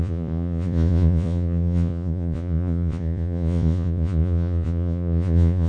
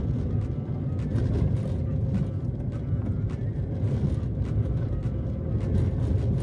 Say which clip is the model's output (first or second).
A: first